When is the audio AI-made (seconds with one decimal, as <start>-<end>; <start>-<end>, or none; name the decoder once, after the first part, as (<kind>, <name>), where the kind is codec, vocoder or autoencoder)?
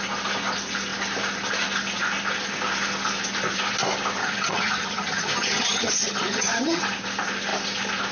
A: 4.2-6.8 (vocoder, HiFi-GAN)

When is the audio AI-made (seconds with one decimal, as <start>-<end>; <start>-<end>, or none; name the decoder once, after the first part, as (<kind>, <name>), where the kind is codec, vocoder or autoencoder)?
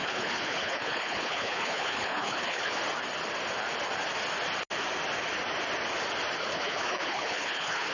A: 0.0-2.8 (codec, HILCodec); 6.4-7.9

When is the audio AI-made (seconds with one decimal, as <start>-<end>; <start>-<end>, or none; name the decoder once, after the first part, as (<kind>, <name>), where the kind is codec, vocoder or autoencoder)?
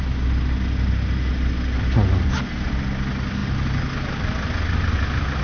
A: none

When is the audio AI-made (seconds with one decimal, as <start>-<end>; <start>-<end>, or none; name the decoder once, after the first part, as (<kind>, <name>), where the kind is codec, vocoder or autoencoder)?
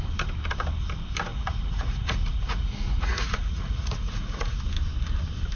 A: 1.3-4.6 (vocoder, Vocos)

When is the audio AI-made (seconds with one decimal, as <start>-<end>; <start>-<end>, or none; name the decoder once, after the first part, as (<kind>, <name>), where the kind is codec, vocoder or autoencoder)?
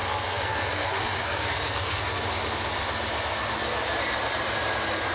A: 0.0-2.0 (codec, SNAC)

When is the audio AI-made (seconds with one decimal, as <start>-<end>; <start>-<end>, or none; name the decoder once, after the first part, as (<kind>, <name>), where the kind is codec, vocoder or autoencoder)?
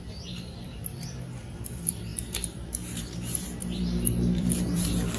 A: 0.0-0.7 (vocoder, BigVGAN v2); 1.4-5.2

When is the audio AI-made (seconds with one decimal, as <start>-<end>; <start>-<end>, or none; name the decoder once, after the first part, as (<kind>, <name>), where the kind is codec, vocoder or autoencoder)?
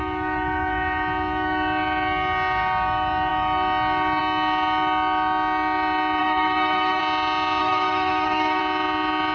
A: 6.2-7.0 (codec, SNAC); 7.6-8.6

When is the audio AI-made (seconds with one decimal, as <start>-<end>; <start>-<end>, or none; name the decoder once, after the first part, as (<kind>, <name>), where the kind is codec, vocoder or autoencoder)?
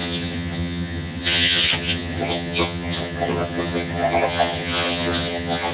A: 0.0-5.7 (vocoder, HiFi-GAN)